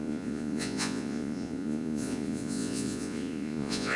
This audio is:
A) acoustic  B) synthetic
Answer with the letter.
B